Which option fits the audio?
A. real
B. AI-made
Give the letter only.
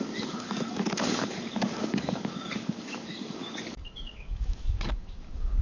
B